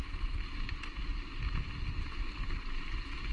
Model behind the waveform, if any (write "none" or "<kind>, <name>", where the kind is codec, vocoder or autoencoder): none